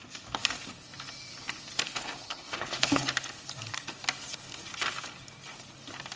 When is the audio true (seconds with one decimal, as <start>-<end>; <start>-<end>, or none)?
0.0-1.9; 3.0-6.2